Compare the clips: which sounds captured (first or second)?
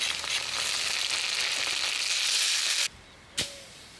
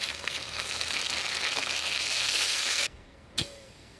first